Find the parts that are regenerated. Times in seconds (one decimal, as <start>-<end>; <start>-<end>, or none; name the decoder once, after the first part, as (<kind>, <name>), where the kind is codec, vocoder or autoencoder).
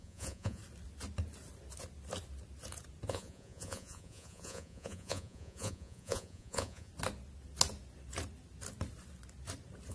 0.0-0.6 (vocoder, Vocos); 3.1-6.9